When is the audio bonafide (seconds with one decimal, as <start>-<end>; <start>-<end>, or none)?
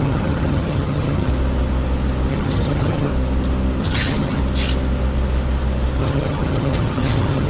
1.3-2.3; 3.1-3.8; 4.4-6.0